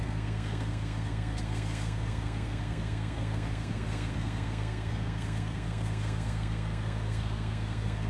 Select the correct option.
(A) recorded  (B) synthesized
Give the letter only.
B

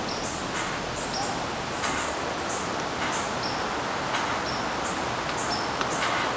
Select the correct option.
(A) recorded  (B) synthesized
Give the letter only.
A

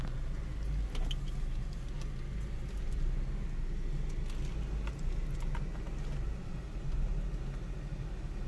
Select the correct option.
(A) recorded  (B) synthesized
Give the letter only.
A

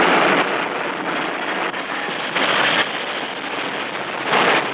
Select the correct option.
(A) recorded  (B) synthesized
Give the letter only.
A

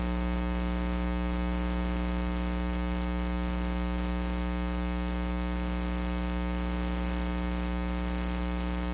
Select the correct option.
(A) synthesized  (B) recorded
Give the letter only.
B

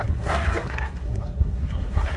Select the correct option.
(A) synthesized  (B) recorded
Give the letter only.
A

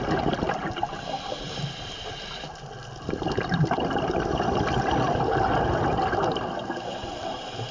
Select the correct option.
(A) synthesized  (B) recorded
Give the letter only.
B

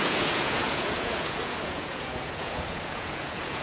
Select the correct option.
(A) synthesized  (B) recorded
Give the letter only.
A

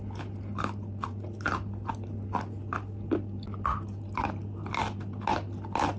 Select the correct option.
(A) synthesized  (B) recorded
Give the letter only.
B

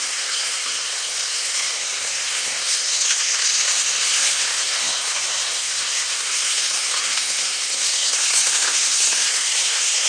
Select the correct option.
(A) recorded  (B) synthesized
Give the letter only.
B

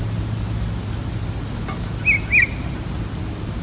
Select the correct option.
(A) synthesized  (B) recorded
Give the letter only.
B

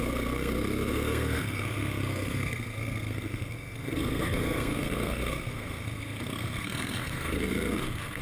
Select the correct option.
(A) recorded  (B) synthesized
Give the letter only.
B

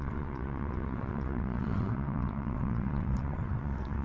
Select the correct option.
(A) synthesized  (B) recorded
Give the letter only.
A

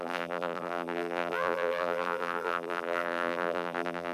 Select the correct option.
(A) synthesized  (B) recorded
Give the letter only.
A